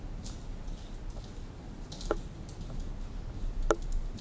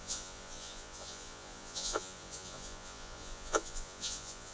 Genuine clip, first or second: first